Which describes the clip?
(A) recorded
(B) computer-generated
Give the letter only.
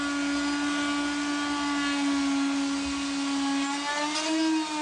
A